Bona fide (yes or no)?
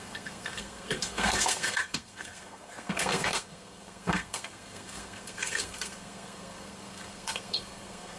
no